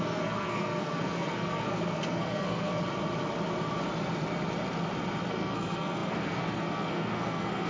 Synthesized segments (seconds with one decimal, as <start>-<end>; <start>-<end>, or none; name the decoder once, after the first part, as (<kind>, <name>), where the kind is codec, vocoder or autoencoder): 0.0-2.8 (codec, SNAC); 5.3-7.7